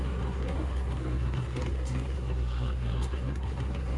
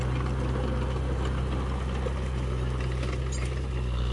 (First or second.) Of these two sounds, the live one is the second